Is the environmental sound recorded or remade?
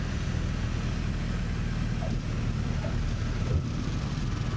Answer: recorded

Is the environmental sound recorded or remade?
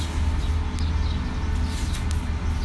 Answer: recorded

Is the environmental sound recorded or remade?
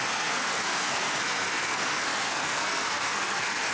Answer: remade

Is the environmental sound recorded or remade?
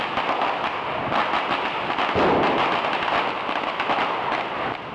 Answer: recorded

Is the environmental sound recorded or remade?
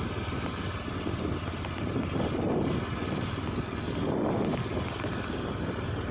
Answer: recorded